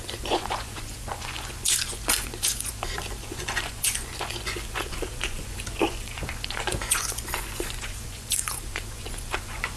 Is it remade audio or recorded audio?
remade